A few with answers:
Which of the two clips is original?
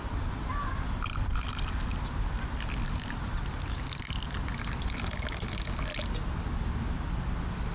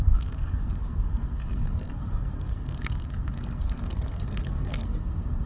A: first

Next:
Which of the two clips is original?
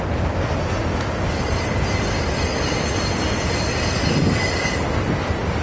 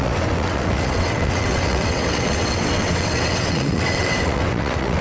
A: first